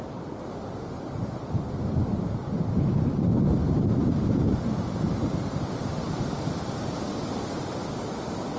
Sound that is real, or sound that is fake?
real